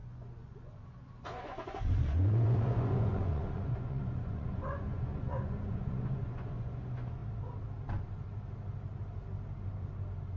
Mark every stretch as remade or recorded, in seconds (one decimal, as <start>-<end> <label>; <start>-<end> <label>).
0.0-7.2 remade; 7.2-10.4 recorded